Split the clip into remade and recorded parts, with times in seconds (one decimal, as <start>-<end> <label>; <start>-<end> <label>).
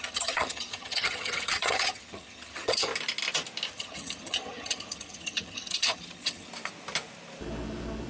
0.0-2.9 remade; 2.9-3.7 recorded; 3.7-6.5 remade; 6.5-8.1 recorded